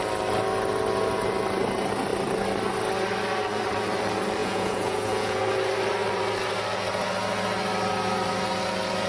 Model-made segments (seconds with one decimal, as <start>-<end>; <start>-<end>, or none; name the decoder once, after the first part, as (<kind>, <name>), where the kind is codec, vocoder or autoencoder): 4.4-5.4 (vocoder, Vocos)